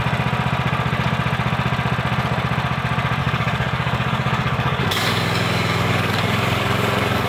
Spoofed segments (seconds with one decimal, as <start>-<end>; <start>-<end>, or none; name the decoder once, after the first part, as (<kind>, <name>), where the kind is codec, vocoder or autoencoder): 3.2-7.3 (codec, DAC)